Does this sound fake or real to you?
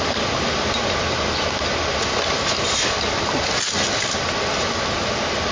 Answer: real